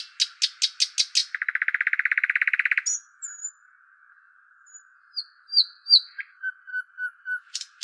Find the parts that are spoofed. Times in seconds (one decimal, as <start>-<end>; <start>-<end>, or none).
6.7-7.8